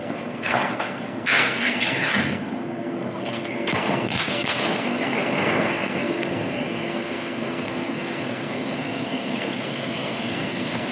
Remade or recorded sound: remade